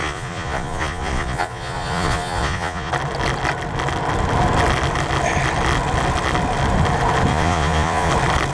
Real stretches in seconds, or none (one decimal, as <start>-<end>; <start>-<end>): 2.9-7.3; 8.1-8.5